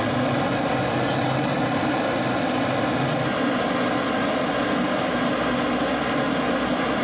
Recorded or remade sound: recorded